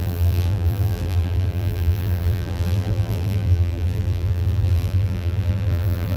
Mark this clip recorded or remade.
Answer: remade